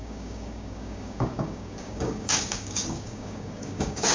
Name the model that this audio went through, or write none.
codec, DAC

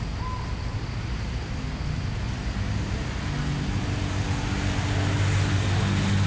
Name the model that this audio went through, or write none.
none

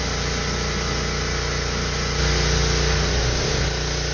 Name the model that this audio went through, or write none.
none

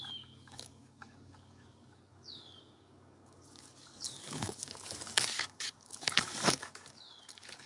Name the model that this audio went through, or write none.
codec, DAC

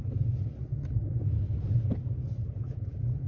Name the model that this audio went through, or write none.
none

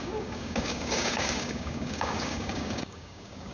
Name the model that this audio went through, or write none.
codec, DAC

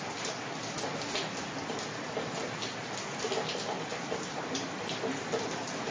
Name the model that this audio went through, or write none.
none